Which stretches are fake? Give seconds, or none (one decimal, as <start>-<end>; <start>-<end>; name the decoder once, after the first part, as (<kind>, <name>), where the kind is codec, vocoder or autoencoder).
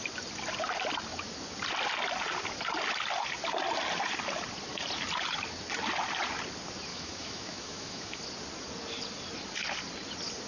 6.9-8.2 (autoencoder, DAC-VAE)